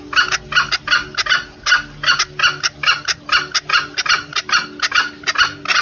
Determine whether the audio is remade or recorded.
recorded